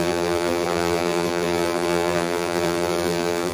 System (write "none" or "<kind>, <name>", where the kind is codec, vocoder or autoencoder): vocoder, BigVGAN v2